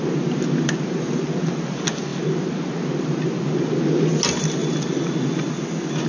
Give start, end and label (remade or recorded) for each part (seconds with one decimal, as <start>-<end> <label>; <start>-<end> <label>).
0.0-6.1 recorded